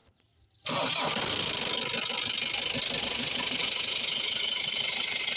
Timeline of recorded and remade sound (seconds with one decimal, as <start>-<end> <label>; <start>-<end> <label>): 0.0-3.0 recorded; 3.0-5.4 remade